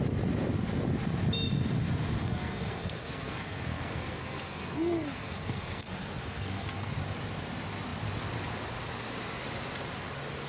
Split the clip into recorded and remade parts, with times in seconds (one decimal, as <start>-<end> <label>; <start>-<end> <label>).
0.0-2.2 recorded; 2.2-6.9 remade; 6.9-10.5 recorded